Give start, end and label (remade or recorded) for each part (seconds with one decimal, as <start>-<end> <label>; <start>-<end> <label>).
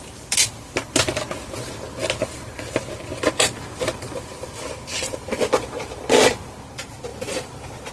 0.0-3.1 recorded; 3.1-5.1 remade; 5.1-7.1 recorded; 7.1-7.9 remade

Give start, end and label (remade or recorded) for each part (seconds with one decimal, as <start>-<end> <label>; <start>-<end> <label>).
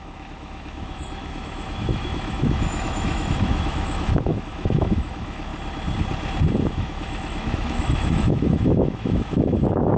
0.0-5.5 remade; 5.5-6.7 recorded; 6.7-10.0 remade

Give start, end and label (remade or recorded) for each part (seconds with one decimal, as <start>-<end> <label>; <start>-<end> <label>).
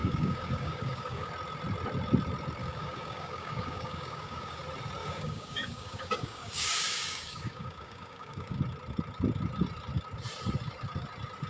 0.0-1.3 remade; 1.3-2.6 recorded; 2.6-4.6 remade; 4.6-5.0 recorded; 5.0-8.6 remade; 8.6-11.5 recorded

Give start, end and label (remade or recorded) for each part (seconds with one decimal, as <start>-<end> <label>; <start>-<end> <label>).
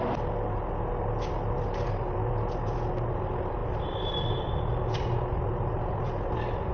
0.0-3.6 recorded; 3.6-6.7 remade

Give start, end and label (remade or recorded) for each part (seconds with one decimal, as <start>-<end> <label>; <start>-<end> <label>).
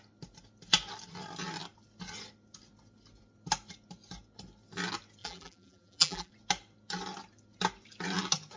0.0-5.2 recorded; 5.2-6.3 remade; 6.3-8.6 recorded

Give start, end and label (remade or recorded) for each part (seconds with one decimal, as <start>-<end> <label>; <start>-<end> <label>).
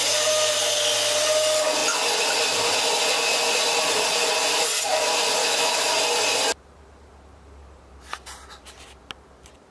0.0-5.4 recorded; 5.4-5.9 remade; 5.9-9.7 recorded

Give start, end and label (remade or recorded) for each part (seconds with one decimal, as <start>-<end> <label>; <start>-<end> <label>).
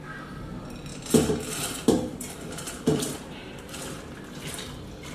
0.0-0.9 recorded; 0.9-4.0 remade; 4.0-5.1 recorded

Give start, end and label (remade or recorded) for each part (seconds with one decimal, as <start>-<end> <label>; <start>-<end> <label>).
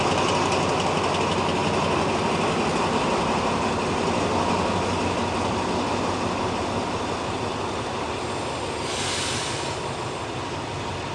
0.0-11.1 recorded